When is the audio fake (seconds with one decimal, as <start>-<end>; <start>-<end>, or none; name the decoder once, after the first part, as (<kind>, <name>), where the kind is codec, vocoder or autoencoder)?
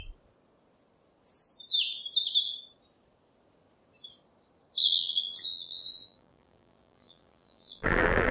4.8-8.3 (vocoder, BigVGAN v2)